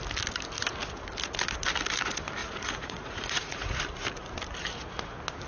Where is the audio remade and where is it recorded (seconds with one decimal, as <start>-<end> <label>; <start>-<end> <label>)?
0.0-2.4 recorded; 2.4-3.8 remade; 3.8-5.5 recorded